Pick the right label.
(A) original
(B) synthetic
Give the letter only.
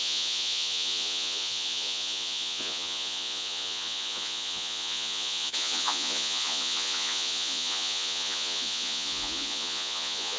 B